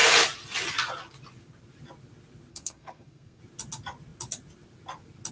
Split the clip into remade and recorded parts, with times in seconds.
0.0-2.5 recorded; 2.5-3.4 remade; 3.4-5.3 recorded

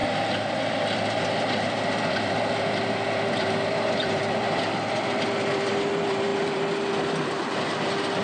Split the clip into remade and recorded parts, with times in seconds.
0.0-0.6 recorded; 0.6-8.2 remade

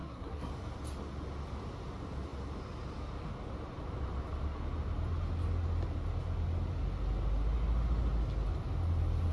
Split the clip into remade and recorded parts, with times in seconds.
0.0-0.5 remade; 0.5-9.3 recorded

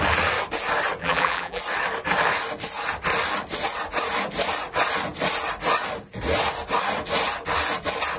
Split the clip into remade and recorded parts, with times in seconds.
0.0-1.0 recorded; 1.0-1.6 remade; 1.6-8.2 recorded

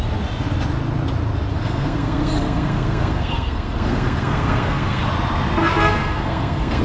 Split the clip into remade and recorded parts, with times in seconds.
0.0-1.5 recorded; 1.5-5.0 remade; 5.0-5.6 recorded; 5.6-6.8 remade

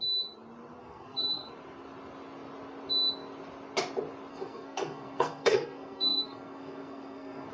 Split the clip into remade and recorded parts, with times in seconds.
0.0-0.8 recorded; 0.8-1.5 remade; 1.5-4.3 recorded; 4.3-7.5 remade

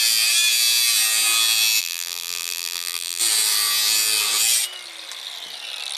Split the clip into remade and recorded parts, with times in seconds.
0.0-1.8 recorded; 1.8-3.2 remade; 3.2-6.0 recorded